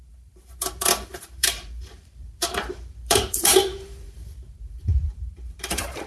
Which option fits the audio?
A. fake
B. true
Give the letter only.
A